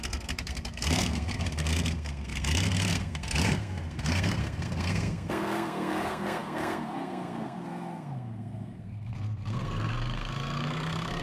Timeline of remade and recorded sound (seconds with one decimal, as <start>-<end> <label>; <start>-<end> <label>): 0.0-11.2 remade